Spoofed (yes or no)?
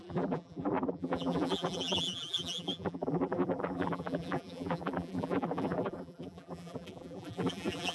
yes